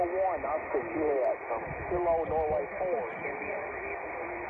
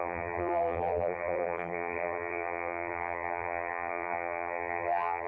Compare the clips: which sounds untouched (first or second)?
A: first